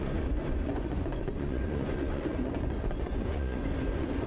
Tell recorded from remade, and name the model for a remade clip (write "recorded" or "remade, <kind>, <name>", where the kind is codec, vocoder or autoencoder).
remade, vocoder, Vocos